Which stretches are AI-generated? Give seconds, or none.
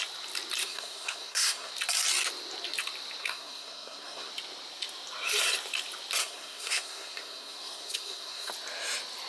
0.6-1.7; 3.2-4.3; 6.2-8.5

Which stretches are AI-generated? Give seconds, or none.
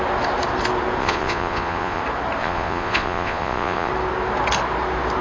1.0-2.0; 2.4-3.9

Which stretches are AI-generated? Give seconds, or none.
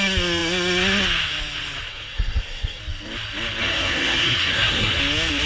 1.9-2.8; 3.6-5.0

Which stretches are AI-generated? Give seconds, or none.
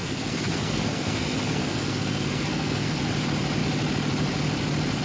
0.0-3.0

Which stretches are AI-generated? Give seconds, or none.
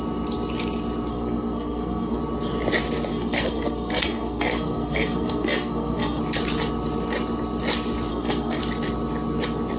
1.1-2.2; 3.1-6.2; 8.1-8.6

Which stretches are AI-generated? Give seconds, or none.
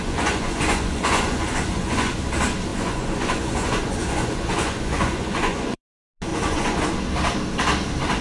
0.0-2.1; 2.7-5.8; 6.3-6.8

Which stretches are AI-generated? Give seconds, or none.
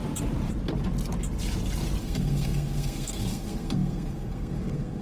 2.0-5.0